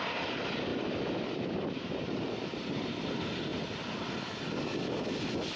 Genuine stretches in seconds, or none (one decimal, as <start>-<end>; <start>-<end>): 0.0-0.7; 2.2-3.5; 4.0-5.6